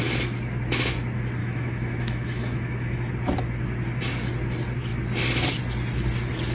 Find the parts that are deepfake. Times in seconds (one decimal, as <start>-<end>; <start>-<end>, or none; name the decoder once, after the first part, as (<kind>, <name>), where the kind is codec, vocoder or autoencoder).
1.4-3.1 (autoencoder, DAC-VAE)